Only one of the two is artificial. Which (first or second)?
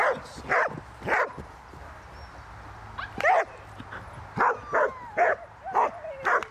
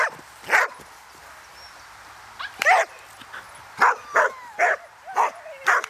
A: second